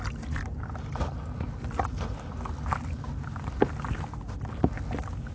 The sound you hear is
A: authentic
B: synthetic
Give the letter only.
A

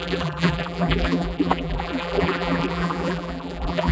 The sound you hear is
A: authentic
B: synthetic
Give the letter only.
B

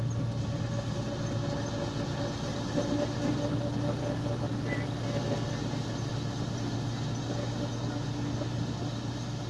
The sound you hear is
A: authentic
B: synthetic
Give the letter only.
A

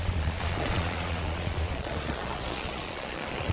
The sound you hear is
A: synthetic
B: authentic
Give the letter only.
A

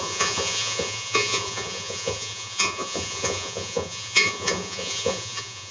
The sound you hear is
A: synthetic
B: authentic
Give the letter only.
A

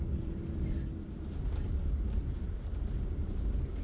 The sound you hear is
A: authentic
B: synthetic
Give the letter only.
A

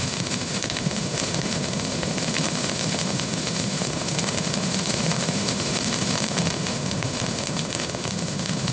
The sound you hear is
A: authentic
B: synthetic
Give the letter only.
B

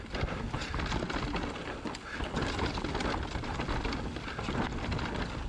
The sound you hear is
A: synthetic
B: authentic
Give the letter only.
B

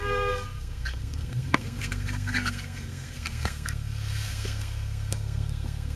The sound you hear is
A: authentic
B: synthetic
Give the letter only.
B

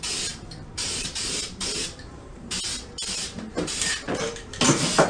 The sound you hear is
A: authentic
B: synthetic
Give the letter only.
B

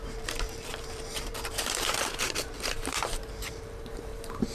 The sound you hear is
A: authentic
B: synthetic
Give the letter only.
B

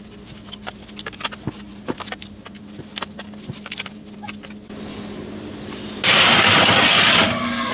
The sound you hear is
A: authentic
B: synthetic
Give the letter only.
A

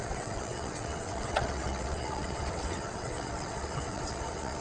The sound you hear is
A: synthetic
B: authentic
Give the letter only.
A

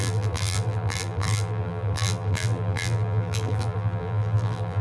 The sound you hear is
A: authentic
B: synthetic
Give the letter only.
B